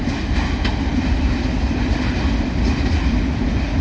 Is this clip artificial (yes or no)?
no